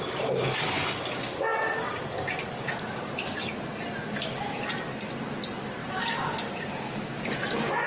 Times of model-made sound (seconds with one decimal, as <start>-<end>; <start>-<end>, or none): 5.8-7.2